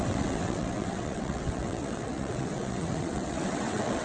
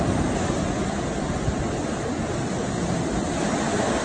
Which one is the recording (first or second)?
second